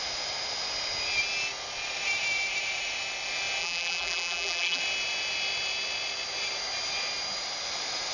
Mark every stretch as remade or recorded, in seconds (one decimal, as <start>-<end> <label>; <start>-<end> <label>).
0.0-3.6 recorded; 3.6-4.8 remade; 4.8-8.1 recorded

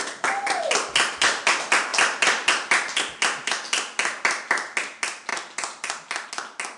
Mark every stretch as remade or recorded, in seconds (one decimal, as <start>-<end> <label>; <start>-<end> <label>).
0.0-5.3 recorded; 5.3-6.3 remade; 6.3-6.8 recorded

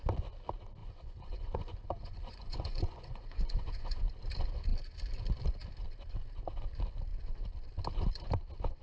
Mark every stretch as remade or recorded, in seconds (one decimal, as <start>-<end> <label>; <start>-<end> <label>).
0.0-0.8 recorded; 0.8-4.0 remade; 4.0-8.8 recorded